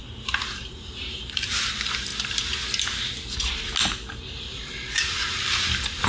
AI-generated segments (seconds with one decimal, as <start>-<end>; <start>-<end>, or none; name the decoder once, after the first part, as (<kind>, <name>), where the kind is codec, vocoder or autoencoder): 0.0-2.1 (vocoder, BigVGAN v2); 4.4-6.1